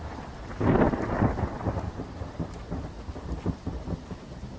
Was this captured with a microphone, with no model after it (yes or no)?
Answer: yes